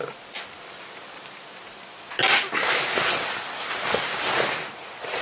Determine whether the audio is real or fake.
real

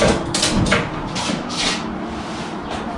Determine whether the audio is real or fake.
real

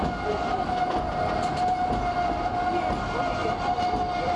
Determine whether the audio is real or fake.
real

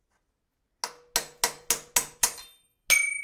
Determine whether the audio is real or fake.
real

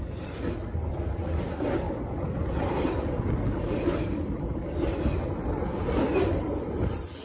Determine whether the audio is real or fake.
real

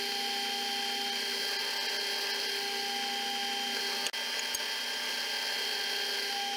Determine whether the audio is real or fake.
real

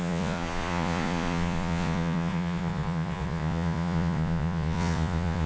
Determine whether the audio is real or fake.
fake